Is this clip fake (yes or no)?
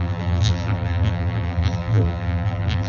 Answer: yes